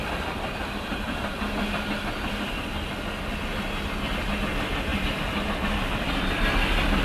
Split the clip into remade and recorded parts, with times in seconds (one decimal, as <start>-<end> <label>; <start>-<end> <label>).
0.0-7.0 recorded